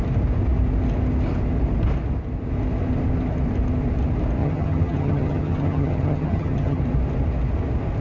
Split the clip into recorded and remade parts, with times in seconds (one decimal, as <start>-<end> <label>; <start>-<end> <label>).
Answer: 0.0-4.4 recorded; 4.4-6.8 remade; 6.8-8.0 recorded